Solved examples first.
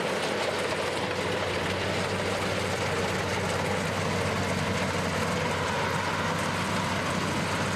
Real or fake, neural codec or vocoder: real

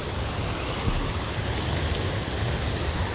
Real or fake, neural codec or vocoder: real